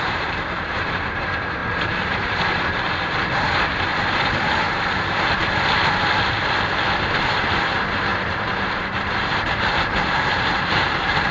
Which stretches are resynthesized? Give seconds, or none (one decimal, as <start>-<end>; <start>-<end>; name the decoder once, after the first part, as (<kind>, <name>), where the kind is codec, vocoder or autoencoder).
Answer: 0.0-3.9 (vocoder, BigVGAN v2); 7.2-11.3